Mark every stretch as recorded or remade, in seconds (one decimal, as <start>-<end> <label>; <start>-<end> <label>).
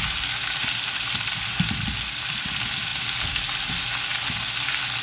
0.0-5.0 recorded